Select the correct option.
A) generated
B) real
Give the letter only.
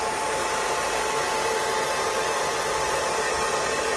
B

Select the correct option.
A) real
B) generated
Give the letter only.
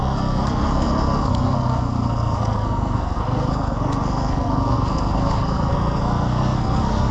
B